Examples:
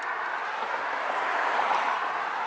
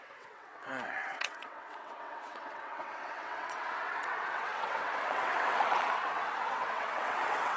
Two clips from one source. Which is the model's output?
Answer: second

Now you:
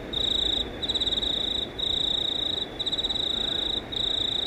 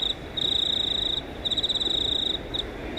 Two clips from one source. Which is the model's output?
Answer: second